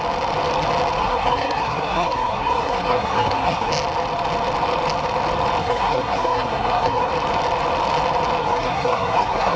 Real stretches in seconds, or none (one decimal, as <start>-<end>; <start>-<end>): 0.0-1.0; 3.7-5.6; 7.1-8.4